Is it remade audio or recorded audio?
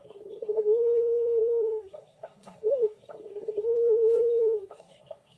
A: remade